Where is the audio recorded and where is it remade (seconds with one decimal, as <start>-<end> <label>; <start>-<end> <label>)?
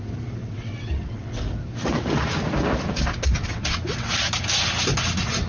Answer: 0.0-0.4 recorded; 0.4-1.4 remade; 1.4-3.4 recorded; 3.4-4.1 remade; 4.1-5.5 recorded